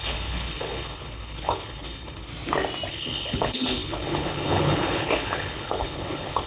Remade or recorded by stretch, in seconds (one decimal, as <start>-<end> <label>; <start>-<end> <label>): 0.0-2.3 remade; 2.3-2.9 recorded; 2.9-6.5 remade